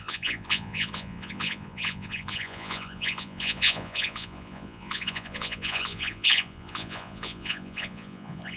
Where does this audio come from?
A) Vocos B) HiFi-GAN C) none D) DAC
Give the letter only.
A